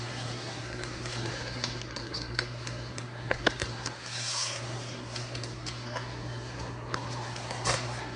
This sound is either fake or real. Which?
fake